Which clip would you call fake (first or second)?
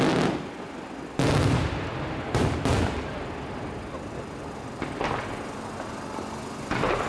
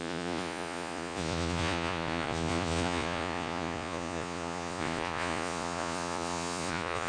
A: second